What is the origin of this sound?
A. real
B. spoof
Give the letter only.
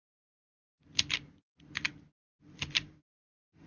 A